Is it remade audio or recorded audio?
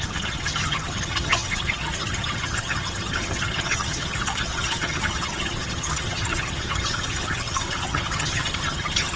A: remade